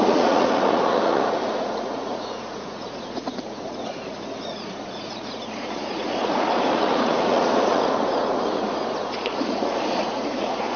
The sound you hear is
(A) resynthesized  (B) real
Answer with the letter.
A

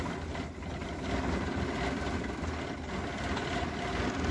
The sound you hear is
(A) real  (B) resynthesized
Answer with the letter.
A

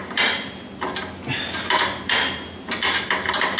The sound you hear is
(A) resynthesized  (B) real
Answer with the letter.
B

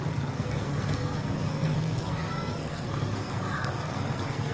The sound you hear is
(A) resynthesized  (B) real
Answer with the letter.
A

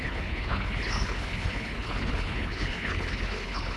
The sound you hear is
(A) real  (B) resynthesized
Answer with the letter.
B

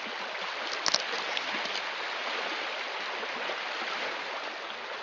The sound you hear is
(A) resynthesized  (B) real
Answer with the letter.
B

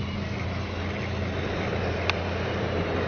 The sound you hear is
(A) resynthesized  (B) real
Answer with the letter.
B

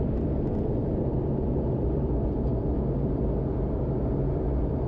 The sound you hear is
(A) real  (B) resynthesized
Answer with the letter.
B